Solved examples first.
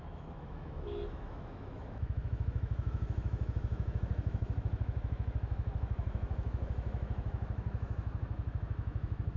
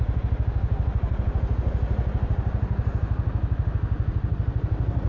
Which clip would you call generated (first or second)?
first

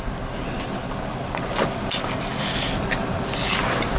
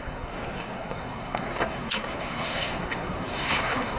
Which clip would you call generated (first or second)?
second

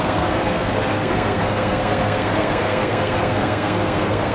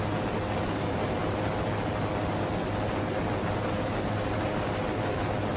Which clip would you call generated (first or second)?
first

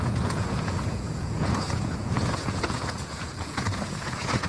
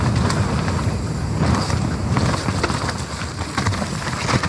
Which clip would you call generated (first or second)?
first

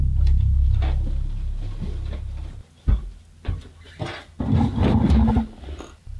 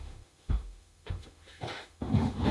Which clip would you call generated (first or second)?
second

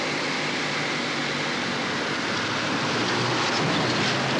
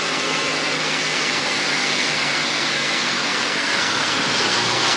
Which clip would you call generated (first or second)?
second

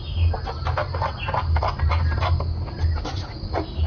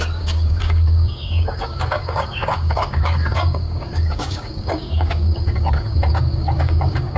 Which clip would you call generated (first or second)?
second